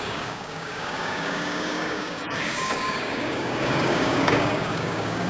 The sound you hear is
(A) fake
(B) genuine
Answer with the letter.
A